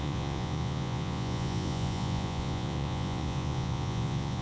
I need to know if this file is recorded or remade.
remade